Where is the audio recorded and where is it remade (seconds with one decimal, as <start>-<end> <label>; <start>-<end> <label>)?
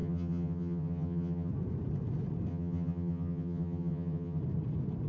0.0-1.5 remade; 1.5-2.5 recorded; 2.5-4.4 remade; 4.4-5.1 recorded